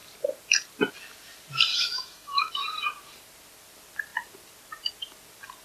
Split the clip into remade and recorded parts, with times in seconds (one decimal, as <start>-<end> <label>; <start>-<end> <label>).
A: 0.0-1.7 recorded; 1.7-2.5 remade; 2.5-5.6 recorded

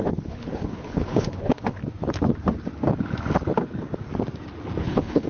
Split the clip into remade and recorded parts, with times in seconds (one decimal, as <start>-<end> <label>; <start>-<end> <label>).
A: 0.0-1.8 remade; 1.8-4.8 recorded; 4.8-5.3 remade

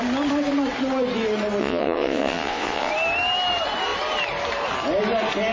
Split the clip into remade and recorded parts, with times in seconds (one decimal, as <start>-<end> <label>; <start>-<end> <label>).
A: 0.0-1.6 recorded; 1.6-2.9 remade; 2.9-5.5 recorded

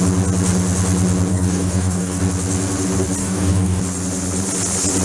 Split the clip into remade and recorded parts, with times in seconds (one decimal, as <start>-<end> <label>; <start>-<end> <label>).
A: 0.0-1.3 recorded; 1.3-2.2 remade; 2.2-3.2 recorded; 3.2-3.8 remade; 3.8-5.0 recorded

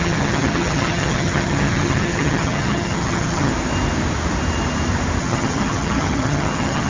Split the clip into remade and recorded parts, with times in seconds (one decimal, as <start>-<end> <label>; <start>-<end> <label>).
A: 0.0-3.5 remade; 3.5-5.2 recorded; 5.2-6.9 remade

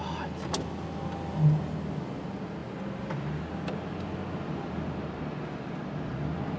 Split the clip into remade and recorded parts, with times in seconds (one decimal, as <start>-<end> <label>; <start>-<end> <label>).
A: 0.0-6.6 recorded